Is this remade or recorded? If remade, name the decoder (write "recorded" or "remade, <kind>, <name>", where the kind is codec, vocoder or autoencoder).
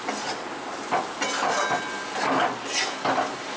recorded